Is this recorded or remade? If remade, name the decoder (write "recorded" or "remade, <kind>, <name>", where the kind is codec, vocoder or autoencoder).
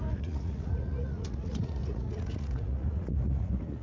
remade, vocoder, Vocos